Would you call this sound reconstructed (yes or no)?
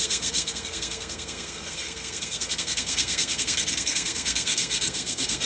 yes